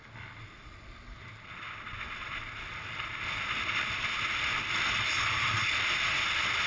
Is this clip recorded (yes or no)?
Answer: yes